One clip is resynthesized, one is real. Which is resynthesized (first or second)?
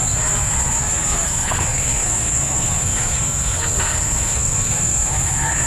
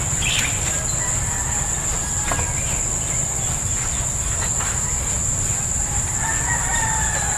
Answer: first